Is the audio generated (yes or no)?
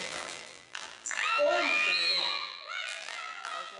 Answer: yes